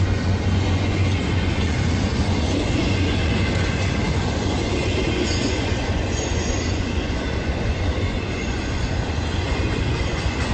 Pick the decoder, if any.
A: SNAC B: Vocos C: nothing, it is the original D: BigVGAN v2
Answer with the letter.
B